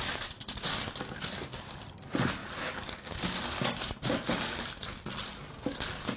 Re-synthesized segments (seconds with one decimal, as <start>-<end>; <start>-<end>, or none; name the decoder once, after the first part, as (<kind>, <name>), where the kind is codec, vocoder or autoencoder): none